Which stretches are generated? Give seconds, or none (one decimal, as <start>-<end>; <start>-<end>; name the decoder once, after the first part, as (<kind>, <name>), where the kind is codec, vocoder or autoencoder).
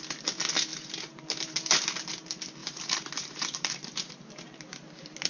0.7-1.2 (vocoder, BigVGAN v2); 2.6-4.1